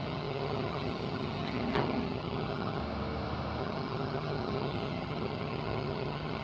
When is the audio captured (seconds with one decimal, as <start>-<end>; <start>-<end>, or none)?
2.8-3.6

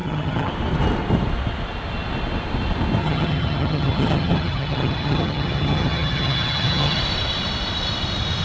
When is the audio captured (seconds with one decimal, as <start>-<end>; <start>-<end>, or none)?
0.5-3.0; 7.0-8.4

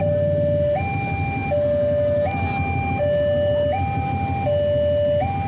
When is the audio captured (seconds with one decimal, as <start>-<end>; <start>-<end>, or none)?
0.0-5.5

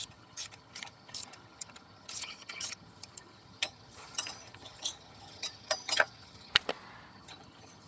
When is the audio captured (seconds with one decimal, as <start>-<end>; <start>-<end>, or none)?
6.5-7.1